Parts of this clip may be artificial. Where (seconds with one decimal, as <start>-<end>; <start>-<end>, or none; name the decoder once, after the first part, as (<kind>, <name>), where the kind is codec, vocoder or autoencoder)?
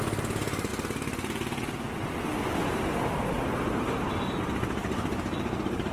0.0-0.7 (vocoder, BigVGAN v2); 3.4-5.9